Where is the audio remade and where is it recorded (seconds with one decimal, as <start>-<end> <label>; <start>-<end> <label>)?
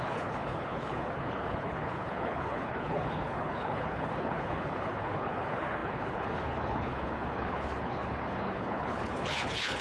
0.0-9.8 remade